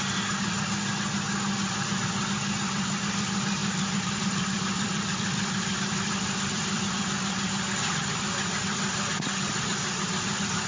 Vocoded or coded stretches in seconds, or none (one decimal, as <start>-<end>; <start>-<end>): 3.6-7.0